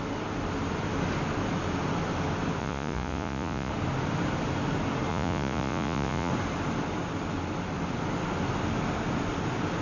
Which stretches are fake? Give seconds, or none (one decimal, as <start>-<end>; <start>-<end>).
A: 2.6-3.7; 5.1-6.3